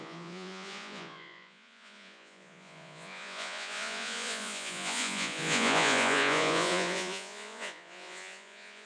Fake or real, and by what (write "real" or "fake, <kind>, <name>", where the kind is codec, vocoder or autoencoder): fake, vocoder, Vocos